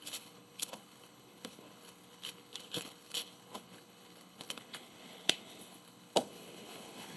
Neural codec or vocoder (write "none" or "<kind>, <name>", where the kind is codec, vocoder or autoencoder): codec, HILCodec